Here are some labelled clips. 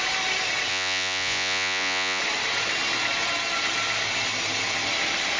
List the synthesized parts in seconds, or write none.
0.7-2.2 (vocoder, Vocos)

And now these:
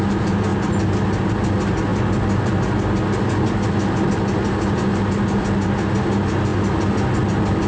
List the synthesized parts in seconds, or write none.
none

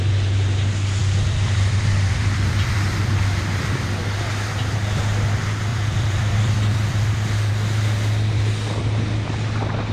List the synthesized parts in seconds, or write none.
1.0-4.0 (vocoder, BigVGAN v2); 5.7-7.5

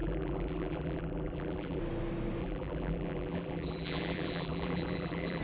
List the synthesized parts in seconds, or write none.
0.0-1.8 (vocoder, BigVGAN v2); 2.4-5.4

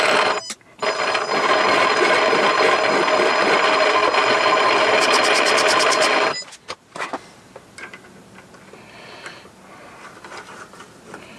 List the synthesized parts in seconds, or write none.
none

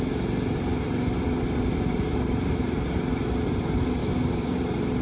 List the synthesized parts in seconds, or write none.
4.0-4.6 (codec, DAC)

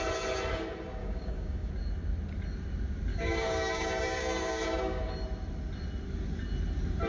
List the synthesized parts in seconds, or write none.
1.0-1.7 (codec, DAC); 3.1-5.1

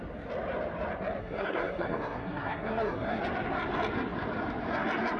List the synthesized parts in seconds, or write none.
1.2-3.2 (codec, SNAC)